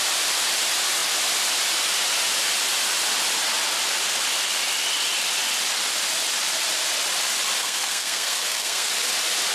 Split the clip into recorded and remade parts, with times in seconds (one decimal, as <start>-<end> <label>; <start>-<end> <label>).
0.0-7.6 recorded; 7.6-8.9 remade; 8.9-9.5 recorded